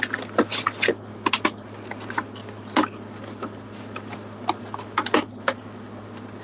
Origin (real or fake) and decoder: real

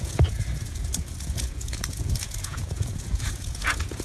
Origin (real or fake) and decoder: fake, vocoder, Vocos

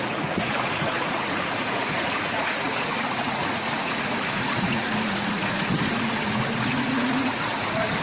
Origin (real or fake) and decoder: fake, vocoder, Vocos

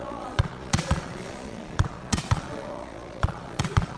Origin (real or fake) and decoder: fake, vocoder, Vocos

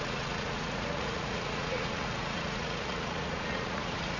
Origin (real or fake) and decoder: fake, vocoder, Vocos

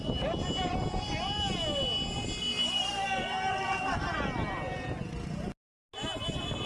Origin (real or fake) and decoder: real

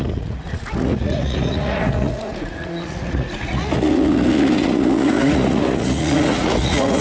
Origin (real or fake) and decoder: fake, vocoder, Vocos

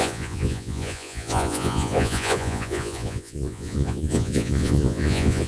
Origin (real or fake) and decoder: fake, vocoder, Vocos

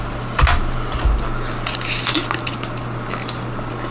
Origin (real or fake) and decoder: real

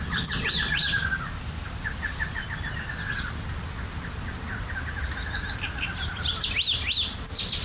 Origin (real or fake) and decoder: real